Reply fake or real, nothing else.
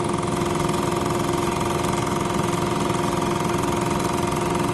real